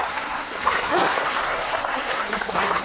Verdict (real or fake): fake